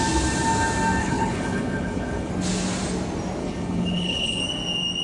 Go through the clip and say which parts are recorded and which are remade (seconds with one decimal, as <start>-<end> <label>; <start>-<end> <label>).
0.0-1.0 recorded; 1.0-2.3 remade; 2.3-3.4 recorded; 3.4-4.4 remade; 4.4-5.0 recorded